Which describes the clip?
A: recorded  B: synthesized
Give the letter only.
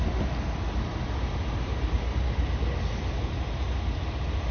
A